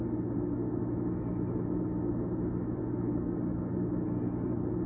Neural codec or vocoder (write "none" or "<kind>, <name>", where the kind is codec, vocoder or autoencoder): none